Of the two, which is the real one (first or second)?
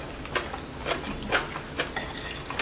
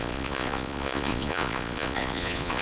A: first